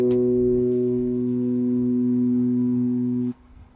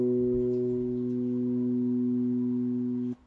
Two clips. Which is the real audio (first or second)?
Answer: second